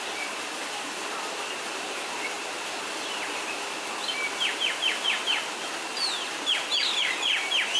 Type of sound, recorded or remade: recorded